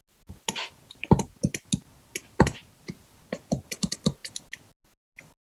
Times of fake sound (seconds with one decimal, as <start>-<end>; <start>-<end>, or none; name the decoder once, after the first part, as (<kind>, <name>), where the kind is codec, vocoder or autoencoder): none